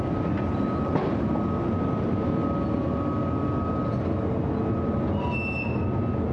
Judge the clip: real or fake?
real